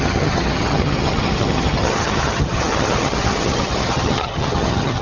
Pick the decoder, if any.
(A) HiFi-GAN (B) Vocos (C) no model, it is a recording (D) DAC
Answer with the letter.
A